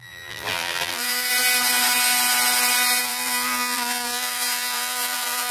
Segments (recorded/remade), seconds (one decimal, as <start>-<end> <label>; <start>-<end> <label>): 0.0-1.3 remade; 1.3-3.0 recorded; 3.0-5.5 remade